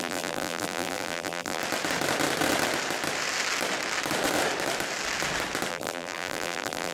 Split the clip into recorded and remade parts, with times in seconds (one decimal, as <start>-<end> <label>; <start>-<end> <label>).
0.0-1.6 remade; 1.6-5.7 recorded; 5.7-6.9 remade